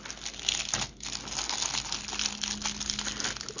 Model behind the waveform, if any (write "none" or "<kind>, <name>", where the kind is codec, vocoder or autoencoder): none